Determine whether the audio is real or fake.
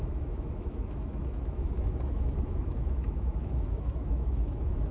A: fake